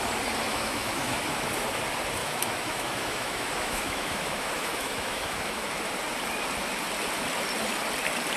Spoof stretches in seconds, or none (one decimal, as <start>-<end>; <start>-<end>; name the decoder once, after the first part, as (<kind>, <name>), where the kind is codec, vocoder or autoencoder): 0.5-1.5 (autoencoder, DAC-VAE); 2.2-5.7

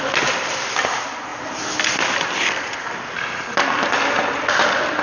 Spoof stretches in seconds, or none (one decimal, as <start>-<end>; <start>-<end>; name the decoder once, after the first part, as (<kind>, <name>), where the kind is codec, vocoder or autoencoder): none

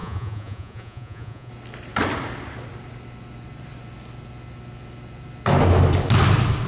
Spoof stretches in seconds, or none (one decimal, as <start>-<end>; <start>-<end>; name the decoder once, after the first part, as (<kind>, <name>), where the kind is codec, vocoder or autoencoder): 0.0-1.5 (vocoder, Vocos)

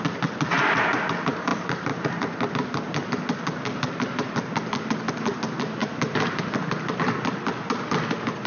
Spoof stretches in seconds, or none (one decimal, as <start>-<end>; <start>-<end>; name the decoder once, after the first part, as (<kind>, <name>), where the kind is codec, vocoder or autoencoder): 5.8-6.4 (vocoder, BigVGAN v2)

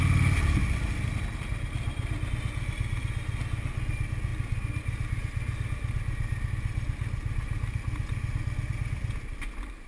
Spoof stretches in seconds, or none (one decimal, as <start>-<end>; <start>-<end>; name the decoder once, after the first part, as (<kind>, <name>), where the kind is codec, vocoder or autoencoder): none

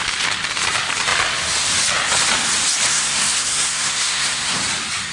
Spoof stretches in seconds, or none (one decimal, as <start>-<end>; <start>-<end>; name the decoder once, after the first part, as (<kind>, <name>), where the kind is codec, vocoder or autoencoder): 2.9-4.6 (codec, SNAC)